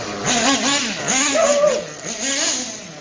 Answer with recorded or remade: recorded